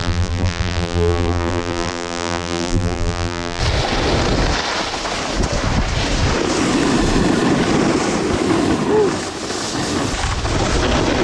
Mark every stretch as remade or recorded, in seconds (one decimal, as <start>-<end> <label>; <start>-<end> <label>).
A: 0.0-3.6 remade; 3.6-11.2 recorded